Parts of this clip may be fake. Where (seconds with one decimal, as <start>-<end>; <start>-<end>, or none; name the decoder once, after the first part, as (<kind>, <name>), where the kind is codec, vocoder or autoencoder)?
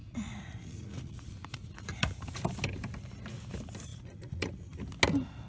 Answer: 0.0-2.4 (vocoder, Vocos); 3.9-4.7